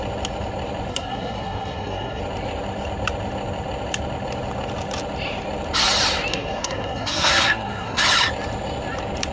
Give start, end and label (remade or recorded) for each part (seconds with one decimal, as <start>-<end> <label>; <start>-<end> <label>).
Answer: 0.0-0.9 recorded; 0.9-2.2 remade; 2.2-6.3 recorded; 6.3-8.0 remade; 8.0-9.3 recorded